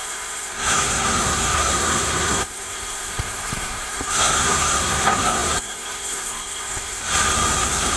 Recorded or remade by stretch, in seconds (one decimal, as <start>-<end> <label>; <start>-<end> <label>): 0.0-7.0 remade; 7.0-7.6 recorded; 7.6-8.0 remade